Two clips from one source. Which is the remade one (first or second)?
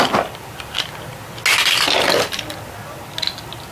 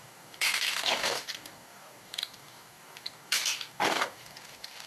second